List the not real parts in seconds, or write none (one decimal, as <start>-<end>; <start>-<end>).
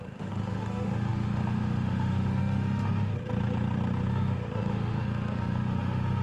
0.0-3.1; 4.1-6.2